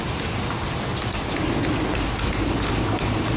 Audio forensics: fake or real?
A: real